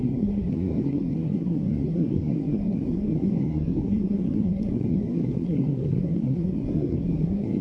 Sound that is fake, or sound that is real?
fake